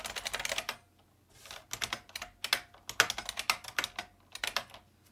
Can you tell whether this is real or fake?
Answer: real